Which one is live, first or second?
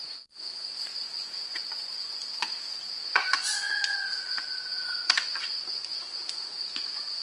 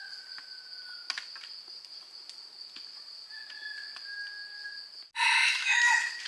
second